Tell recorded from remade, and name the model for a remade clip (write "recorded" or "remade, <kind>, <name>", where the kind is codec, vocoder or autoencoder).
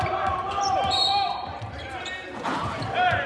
remade, vocoder, BigVGAN v2